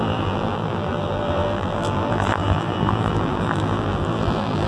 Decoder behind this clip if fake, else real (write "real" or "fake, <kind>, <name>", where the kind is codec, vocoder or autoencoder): fake, vocoder, BigVGAN v2